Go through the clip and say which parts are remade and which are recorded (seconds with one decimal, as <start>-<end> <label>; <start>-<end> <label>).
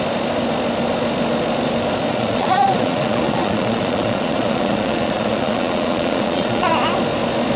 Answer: 0.0-2.1 recorded; 2.1-6.7 remade; 6.7-7.6 recorded